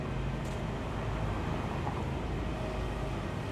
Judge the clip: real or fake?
real